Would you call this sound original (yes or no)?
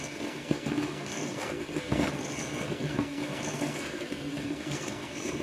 no